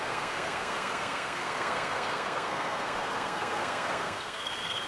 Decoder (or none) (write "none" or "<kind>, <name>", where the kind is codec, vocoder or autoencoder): codec, SNAC